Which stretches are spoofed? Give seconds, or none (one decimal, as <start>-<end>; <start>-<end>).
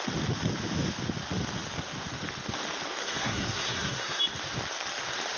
3.0-4.2